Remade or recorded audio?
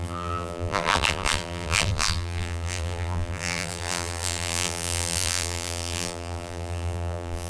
remade